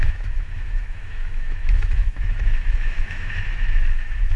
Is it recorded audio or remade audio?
remade